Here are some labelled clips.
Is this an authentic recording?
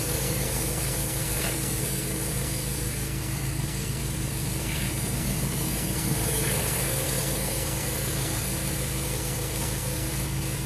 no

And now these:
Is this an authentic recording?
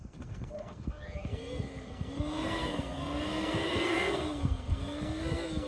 no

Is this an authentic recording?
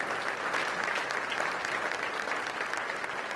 no